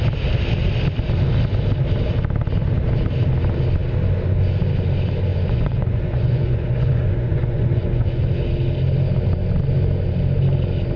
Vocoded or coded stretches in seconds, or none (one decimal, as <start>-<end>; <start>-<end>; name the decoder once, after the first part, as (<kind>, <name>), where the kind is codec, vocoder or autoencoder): 5.3-8.2 (vocoder, Vocos)